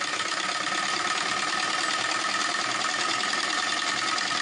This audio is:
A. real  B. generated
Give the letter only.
A